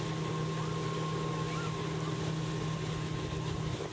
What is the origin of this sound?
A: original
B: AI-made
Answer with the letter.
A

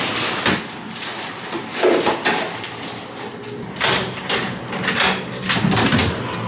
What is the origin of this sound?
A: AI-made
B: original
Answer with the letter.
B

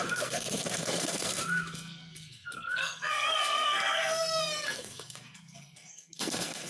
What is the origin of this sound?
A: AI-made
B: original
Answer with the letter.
A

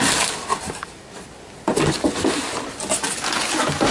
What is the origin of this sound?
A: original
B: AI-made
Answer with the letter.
A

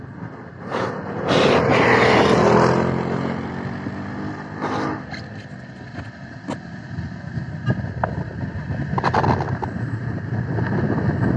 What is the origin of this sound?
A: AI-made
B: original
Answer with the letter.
B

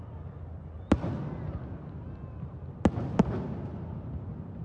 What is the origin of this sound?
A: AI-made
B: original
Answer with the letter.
B